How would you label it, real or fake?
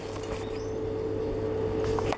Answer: real